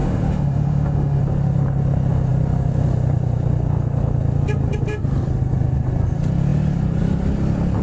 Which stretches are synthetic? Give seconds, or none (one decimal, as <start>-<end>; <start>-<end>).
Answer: 0.0-1.2